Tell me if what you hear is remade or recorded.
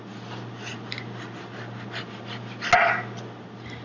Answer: recorded